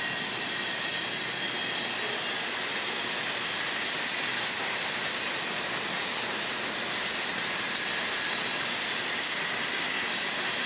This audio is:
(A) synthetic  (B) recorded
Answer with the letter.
B